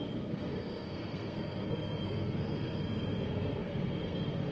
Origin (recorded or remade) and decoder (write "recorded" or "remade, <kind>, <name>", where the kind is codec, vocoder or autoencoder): remade, codec, SNAC